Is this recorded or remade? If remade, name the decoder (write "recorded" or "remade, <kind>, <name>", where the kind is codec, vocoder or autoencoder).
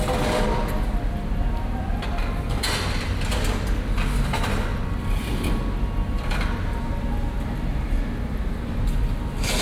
recorded